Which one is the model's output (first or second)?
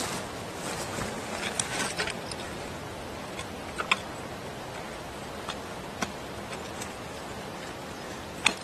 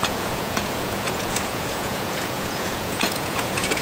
second